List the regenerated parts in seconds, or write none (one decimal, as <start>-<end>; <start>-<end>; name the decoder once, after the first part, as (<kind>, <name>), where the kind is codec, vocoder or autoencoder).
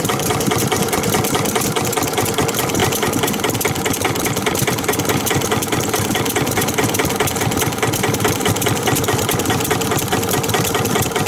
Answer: 0.0-11.3 (vocoder, BigVGAN v2)